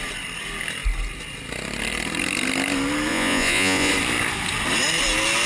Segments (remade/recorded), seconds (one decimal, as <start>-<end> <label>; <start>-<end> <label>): 0.0-3.1 recorded; 3.1-3.9 remade; 3.9-5.5 recorded